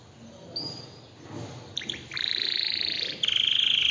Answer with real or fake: real